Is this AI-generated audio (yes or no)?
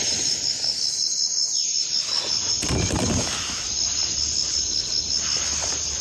no